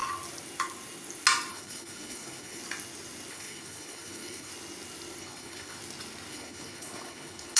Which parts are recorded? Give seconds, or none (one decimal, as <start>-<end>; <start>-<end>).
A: 0.0-1.5; 2.6-3.3; 4.5-5.2; 5.8-6.3